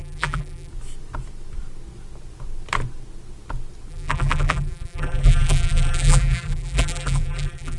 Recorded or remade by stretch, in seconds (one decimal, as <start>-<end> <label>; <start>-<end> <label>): 0.0-0.7 remade; 0.7-3.9 recorded; 3.9-7.8 remade